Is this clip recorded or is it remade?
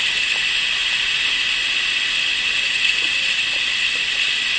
recorded